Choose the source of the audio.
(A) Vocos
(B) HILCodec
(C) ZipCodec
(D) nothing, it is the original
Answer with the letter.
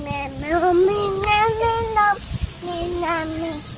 D